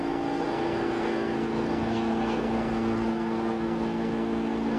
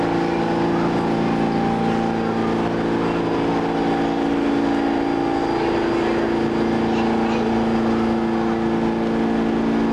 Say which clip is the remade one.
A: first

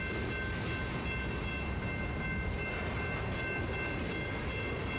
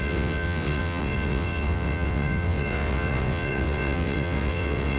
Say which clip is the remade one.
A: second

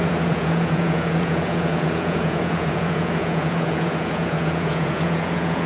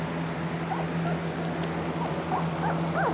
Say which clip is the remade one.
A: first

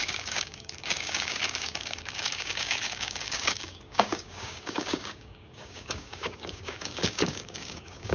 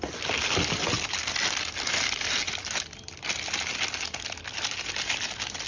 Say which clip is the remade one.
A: first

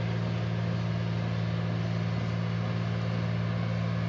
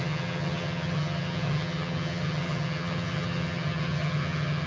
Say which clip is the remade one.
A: second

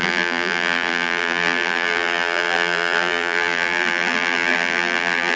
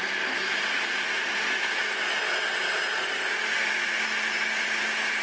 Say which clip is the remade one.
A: first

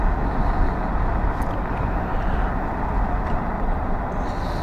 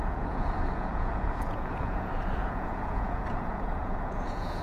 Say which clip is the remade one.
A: second